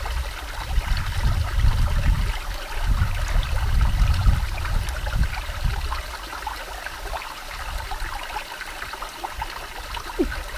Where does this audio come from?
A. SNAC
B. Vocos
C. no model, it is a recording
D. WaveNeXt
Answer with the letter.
C